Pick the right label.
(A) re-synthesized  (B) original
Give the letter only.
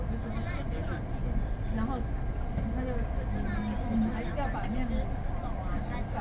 B